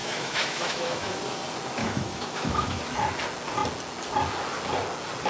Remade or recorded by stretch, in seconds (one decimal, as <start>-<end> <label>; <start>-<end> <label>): 0.0-1.2 remade; 1.2-1.8 recorded; 1.8-2.8 remade; 2.8-5.3 recorded